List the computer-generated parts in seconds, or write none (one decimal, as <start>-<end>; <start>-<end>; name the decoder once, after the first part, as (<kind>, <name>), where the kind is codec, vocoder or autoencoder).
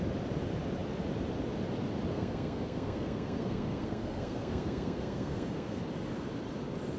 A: 2.1-5.8 (codec, SNAC)